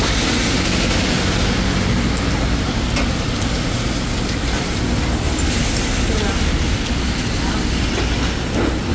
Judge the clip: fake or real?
real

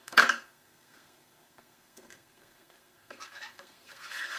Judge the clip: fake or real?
fake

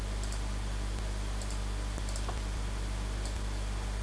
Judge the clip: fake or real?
real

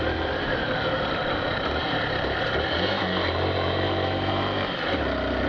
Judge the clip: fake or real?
fake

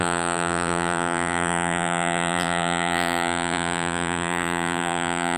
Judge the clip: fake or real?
fake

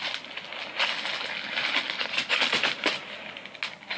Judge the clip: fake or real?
real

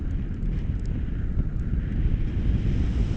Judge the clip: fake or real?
real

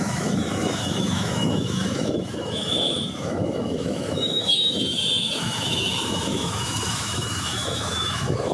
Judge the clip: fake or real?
fake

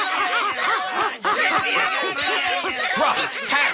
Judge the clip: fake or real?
real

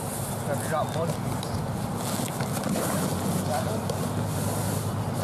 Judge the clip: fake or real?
real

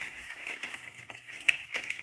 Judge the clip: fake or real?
fake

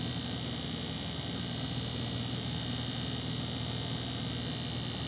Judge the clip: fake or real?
real